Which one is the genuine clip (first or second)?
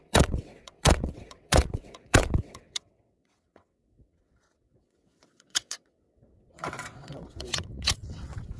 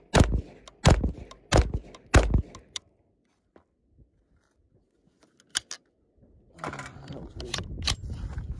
second